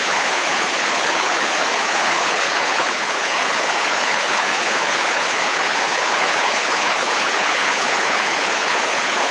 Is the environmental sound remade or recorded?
remade